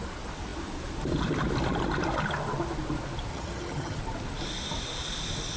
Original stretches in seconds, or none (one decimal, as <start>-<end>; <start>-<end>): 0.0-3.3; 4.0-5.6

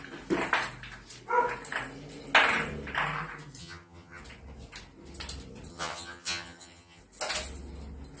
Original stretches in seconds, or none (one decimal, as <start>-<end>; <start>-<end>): 0.0-3.6; 4.2-5.7; 7.0-8.2

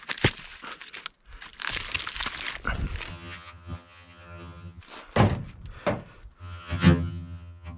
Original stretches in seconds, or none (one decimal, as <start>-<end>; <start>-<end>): 0.0-3.1; 4.8-6.4

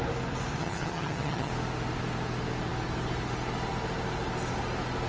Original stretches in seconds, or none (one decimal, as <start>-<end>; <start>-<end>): 0.0-0.6; 1.5-5.1

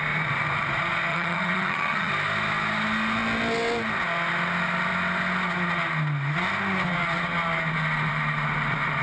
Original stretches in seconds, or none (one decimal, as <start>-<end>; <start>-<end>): 0.0-1.1; 2.1-9.0

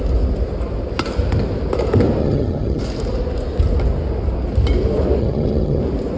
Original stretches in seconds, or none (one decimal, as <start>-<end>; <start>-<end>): 0.0-2.2; 2.8-5.2; 5.8-6.2

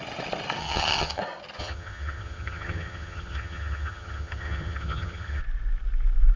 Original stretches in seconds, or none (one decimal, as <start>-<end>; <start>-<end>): 0.0-0.6; 1.2-1.6; 5.4-6.4